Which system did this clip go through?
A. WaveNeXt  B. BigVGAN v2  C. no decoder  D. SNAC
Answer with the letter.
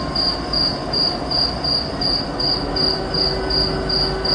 C